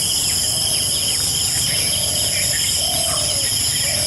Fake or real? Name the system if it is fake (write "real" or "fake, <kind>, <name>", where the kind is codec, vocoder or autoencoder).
real